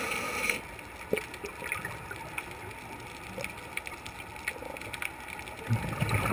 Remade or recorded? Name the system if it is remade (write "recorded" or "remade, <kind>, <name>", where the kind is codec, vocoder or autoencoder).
recorded